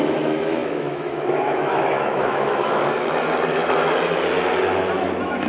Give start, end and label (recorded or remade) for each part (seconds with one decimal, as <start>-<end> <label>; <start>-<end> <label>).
0.0-2.8 remade; 2.8-5.0 recorded; 5.0-5.5 remade